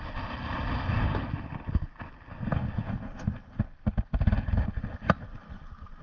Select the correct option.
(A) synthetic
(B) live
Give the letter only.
B